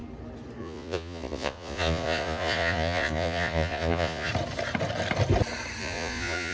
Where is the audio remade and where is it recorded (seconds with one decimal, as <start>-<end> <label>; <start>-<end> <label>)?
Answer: 0.0-0.6 recorded; 0.6-4.3 remade; 4.3-5.8 recorded; 5.8-6.5 remade